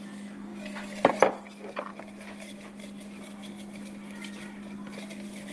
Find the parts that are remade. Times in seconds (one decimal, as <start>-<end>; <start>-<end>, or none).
none